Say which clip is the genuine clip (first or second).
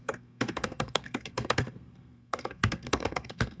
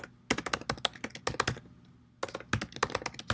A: second